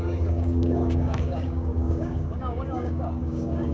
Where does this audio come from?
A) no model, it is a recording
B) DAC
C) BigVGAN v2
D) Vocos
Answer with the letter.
B